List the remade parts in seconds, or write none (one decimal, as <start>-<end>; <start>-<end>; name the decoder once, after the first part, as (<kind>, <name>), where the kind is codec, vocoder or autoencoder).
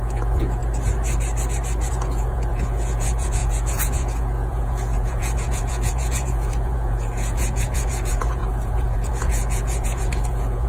0.0-0.6 (vocoder, Vocos); 1.9-10.7